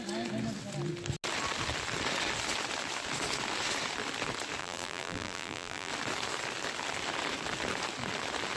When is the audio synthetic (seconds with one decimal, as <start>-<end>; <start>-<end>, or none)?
4.6-5.9